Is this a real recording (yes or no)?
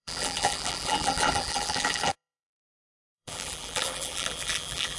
no